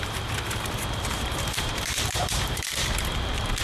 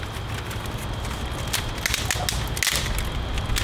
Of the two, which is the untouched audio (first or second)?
second